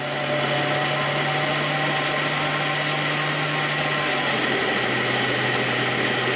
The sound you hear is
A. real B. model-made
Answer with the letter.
A